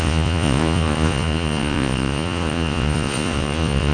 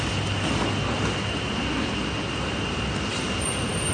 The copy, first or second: first